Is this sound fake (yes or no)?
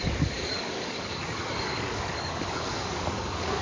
yes